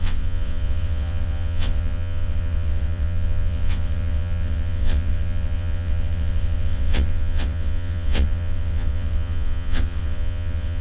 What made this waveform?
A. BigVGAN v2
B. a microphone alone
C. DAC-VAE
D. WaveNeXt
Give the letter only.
D